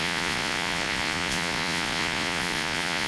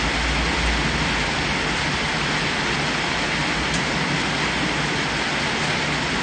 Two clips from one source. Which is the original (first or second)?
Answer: second